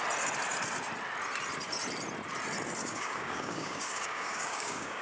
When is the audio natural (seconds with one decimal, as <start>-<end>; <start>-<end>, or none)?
0.0-2.8